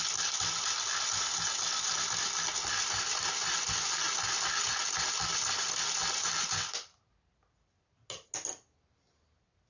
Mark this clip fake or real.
real